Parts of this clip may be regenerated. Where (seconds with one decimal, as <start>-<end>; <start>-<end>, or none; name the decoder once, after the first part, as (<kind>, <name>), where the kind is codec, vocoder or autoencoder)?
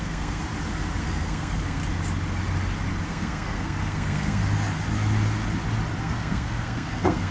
0.0-0.4 (codec, SNAC); 1.0-1.8; 3.1-4.4; 6.0-7.3